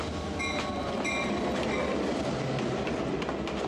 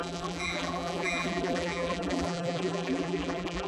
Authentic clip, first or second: first